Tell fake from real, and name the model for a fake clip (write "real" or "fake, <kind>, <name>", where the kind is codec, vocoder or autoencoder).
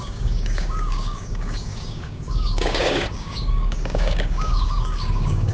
fake, codec, DAC